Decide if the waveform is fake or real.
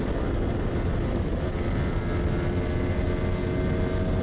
real